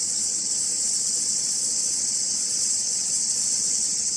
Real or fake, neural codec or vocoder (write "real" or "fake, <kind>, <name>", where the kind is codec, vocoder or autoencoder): fake, vocoder, WaveNeXt